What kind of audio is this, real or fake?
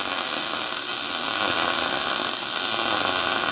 real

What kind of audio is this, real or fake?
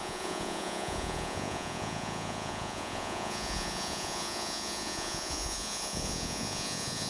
fake